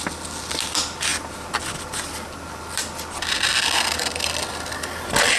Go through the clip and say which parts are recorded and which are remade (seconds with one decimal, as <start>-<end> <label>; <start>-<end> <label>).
0.0-5.4 recorded